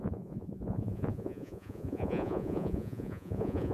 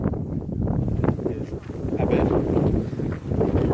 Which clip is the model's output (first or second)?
first